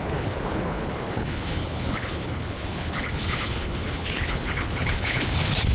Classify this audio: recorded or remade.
remade